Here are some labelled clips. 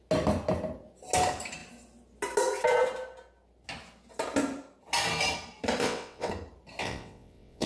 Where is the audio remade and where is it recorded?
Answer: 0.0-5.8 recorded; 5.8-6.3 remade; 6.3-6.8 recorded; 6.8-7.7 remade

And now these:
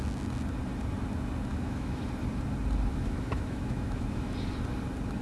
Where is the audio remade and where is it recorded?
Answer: 0.0-1.5 recorded; 1.5-2.0 remade; 2.0-2.9 recorded; 2.9-4.3 remade; 4.3-5.2 recorded

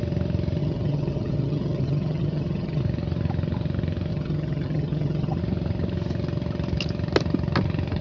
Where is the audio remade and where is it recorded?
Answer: 0.0-0.6 recorded; 0.6-2.8 remade; 2.8-4.1 recorded; 4.1-5.4 remade; 5.4-8.0 recorded